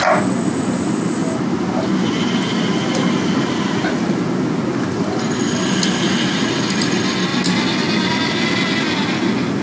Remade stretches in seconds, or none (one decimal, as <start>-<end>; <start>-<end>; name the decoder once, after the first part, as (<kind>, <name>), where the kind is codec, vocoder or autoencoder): none